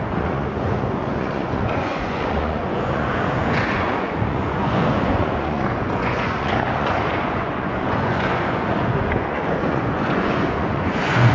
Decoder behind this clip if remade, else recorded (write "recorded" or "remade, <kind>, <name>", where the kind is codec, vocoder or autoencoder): remade, vocoder, Vocos